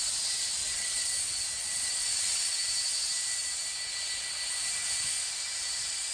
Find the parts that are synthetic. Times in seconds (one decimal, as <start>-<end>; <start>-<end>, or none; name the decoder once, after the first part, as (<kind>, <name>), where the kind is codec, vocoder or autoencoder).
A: 0.6-1.1 (vocoder, WaveNeXt); 1.6-2.5